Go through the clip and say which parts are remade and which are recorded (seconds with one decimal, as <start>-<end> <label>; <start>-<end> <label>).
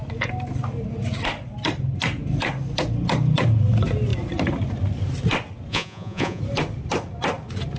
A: 0.0-5.7 recorded; 5.7-6.4 remade; 6.4-7.8 recorded